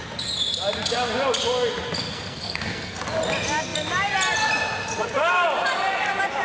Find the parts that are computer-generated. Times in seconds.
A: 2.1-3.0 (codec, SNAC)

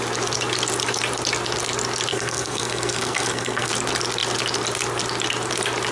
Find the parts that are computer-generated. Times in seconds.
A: 2.1-3.7 (codec, SNAC)